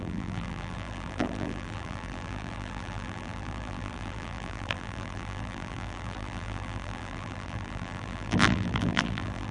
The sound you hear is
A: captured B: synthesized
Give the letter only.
B